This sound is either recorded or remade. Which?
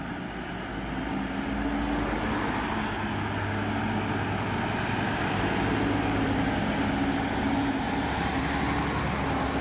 recorded